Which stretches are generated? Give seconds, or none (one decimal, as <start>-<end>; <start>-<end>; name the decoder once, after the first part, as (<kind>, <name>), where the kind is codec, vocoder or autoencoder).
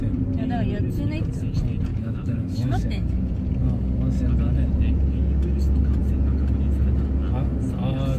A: 1.9-2.9 (autoencoder, DAC-VAE)